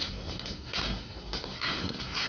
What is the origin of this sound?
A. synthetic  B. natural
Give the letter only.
A